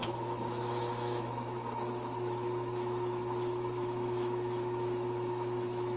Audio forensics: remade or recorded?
remade